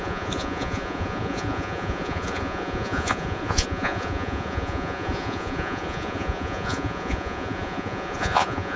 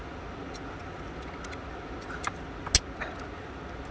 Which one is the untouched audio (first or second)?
second